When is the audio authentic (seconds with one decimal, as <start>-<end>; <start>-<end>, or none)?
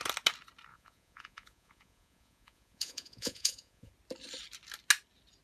0.0-0.7; 3.9-5.4